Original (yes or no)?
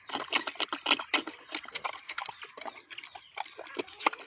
yes